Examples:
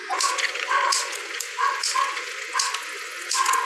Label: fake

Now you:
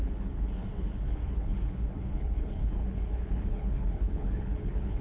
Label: fake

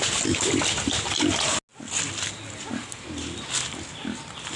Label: real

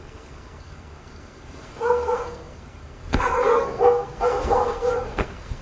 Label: fake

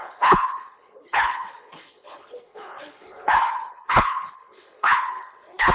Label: fake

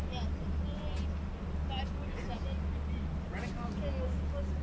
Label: real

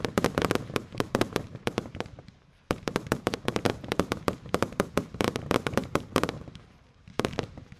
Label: fake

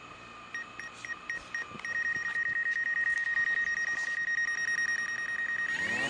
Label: real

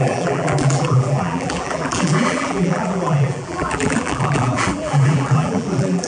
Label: fake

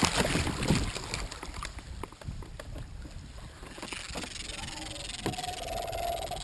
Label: real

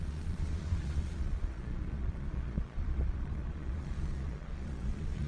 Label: fake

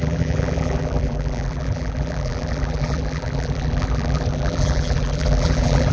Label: fake